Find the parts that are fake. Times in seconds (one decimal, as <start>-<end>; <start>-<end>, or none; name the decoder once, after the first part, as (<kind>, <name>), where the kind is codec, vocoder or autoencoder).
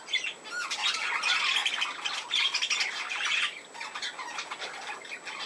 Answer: none